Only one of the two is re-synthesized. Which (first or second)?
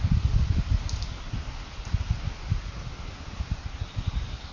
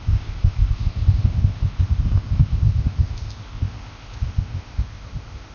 second